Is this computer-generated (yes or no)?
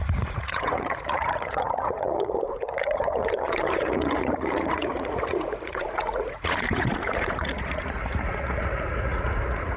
yes